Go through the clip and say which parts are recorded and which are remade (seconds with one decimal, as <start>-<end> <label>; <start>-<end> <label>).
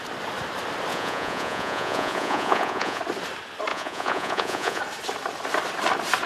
0.0-0.9 recorded; 0.9-3.0 remade; 3.0-3.7 recorded; 3.7-4.8 remade; 4.8-6.3 recorded